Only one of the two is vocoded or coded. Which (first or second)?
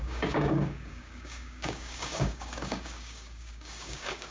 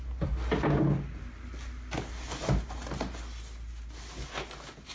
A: first